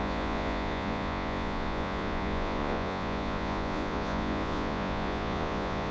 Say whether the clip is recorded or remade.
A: remade